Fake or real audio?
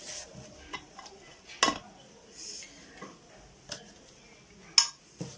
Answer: real